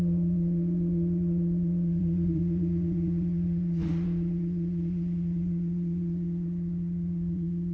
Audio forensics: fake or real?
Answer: fake